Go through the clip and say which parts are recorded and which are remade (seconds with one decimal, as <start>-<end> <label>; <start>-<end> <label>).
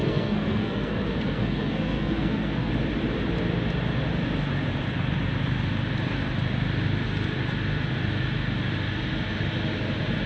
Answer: 0.0-2.7 remade; 2.7-10.3 recorded